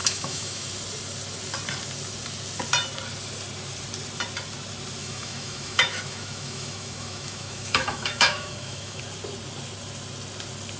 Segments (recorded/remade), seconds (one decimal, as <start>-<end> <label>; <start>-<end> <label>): 0.0-0.7 remade; 0.7-5.0 recorded; 5.0-9.0 remade; 9.0-10.8 recorded